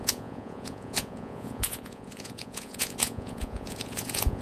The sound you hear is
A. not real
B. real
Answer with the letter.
A